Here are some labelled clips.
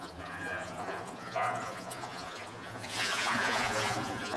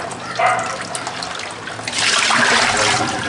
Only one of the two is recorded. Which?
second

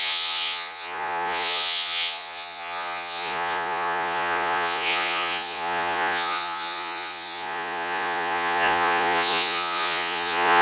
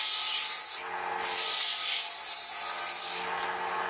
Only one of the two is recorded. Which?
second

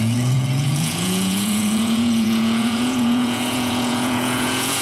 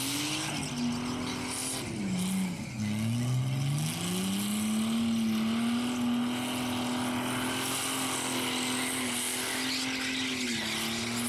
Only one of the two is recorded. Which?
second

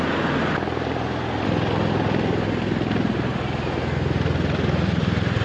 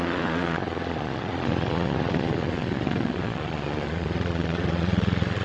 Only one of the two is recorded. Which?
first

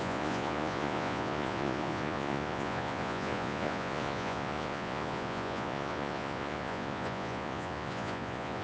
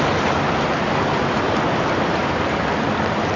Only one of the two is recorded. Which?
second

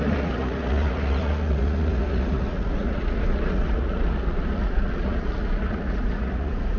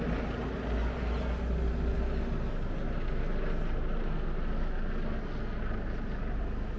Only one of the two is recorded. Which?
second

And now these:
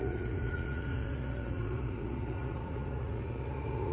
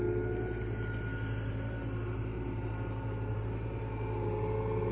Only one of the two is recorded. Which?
second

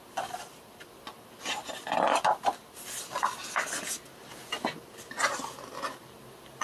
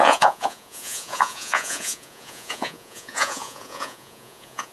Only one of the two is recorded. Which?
first